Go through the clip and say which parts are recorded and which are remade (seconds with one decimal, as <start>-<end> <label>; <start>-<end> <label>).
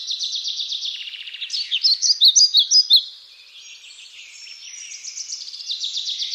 0.0-6.3 recorded